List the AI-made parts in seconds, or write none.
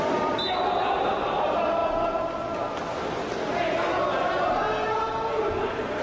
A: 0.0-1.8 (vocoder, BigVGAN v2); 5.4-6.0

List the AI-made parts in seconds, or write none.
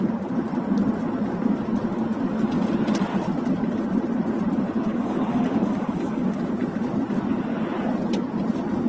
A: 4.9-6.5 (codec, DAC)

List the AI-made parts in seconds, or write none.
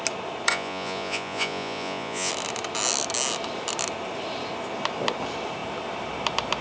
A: 0.5-2.3 (vocoder, Vocos)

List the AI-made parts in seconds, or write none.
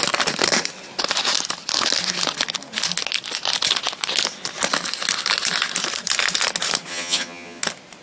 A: 6.9-7.6 (vocoder, HiFi-GAN)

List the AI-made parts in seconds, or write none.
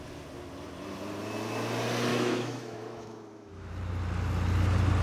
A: 2.1-3.7 (autoencoder, DAC-VAE)